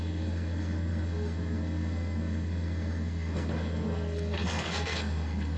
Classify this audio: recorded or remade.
remade